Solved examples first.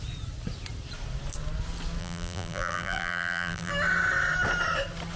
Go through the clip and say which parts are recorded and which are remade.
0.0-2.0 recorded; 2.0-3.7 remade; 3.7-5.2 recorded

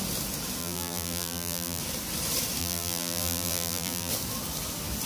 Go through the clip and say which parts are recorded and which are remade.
0.0-0.6 recorded; 0.6-1.8 remade; 1.8-2.6 recorded; 2.6-4.1 remade; 4.1-5.1 recorded

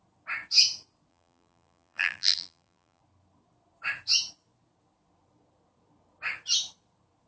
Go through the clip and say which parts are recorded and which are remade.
0.0-1.1 recorded; 1.1-3.0 remade; 3.0-7.3 recorded